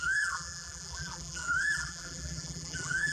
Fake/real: fake